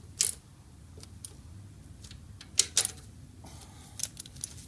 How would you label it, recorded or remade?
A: recorded